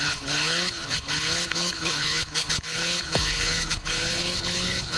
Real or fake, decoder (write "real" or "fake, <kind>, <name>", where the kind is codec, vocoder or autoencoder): fake, codec, HILCodec